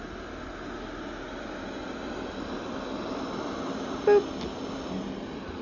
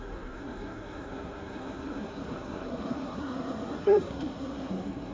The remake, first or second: second